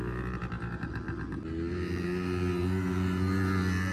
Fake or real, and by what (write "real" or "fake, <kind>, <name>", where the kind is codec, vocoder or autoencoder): real